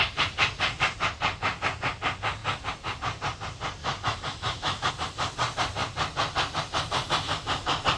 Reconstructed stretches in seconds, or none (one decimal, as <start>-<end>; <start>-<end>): 3.8-4.9